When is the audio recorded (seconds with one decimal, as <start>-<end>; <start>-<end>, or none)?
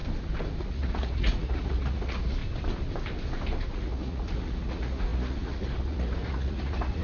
0.0-0.6; 2.4-3.7